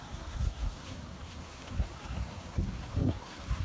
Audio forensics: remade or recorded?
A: remade